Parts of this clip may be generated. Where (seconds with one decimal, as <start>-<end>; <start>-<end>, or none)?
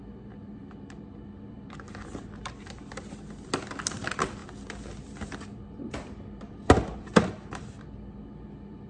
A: none